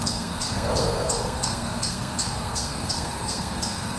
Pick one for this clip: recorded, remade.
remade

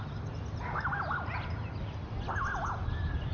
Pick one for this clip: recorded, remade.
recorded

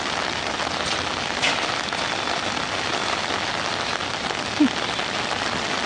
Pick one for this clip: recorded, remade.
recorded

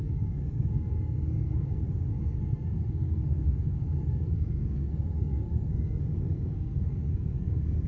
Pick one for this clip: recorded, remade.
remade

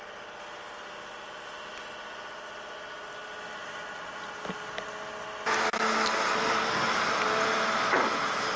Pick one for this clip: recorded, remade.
recorded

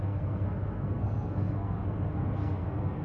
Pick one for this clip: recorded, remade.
remade